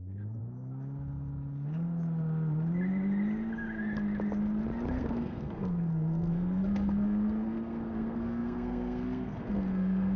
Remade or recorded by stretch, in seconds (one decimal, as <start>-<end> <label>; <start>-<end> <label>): 0.0-0.4 remade; 0.4-4.9 recorded; 4.9-10.2 remade